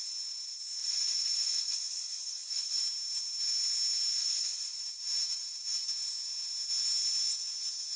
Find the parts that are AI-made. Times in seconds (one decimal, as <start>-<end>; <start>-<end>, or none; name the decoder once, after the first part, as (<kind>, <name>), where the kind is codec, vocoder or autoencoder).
0.8-2.8 (vocoder, Vocos); 4.2-4.8